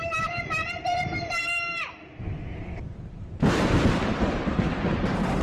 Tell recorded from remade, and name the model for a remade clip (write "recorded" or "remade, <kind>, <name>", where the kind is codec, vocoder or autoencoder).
remade, vocoder, BigVGAN v2